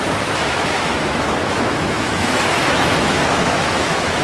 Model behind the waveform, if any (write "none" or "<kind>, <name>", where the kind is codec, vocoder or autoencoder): autoencoder, DAC-VAE